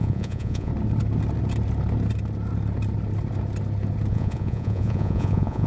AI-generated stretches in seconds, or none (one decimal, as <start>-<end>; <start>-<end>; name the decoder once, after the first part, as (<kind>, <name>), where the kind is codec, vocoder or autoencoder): 0.0-0.7 (vocoder, Vocos); 4.1-5.7